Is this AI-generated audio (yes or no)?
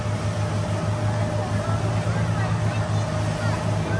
no